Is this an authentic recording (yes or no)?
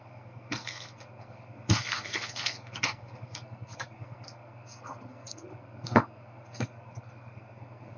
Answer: no